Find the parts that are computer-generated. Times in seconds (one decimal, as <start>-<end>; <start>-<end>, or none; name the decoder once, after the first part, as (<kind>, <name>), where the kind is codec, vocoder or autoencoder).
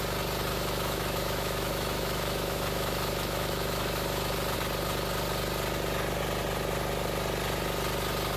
0.5-4.3 (autoencoder, DAC-VAE)